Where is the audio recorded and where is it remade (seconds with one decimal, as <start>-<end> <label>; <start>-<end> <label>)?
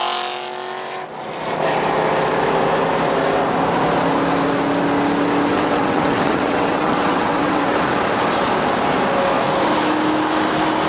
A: 0.0-5.5 recorded; 5.5-7.9 remade; 7.9-10.9 recorded